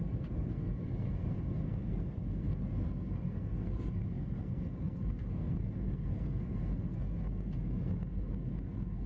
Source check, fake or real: fake